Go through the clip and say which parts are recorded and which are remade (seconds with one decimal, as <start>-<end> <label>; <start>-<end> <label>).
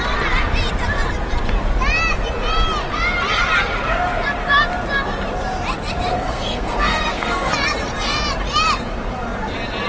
0.0-6.1 recorded; 6.1-7.5 remade; 7.5-9.9 recorded